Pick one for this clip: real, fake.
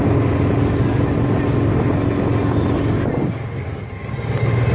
real